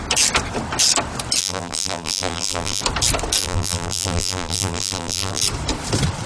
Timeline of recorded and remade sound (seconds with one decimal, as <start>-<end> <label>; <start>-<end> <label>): 0.0-1.4 recorded; 1.4-2.8 remade; 2.8-3.4 recorded; 3.4-5.4 remade; 5.4-6.3 recorded